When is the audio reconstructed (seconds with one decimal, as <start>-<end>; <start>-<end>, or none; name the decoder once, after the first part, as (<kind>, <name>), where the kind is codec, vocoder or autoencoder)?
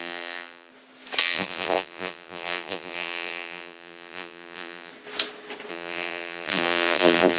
0.0-0.7 (vocoder, BigVGAN v2); 1.2-4.9; 5.7-7.4